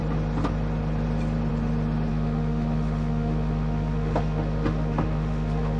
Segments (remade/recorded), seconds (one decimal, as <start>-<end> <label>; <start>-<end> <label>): 0.0-2.1 recorded; 2.1-5.8 remade